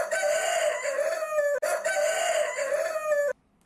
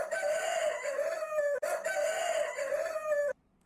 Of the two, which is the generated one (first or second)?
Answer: second